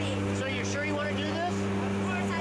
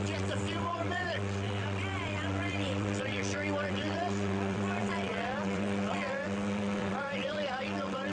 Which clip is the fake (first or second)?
second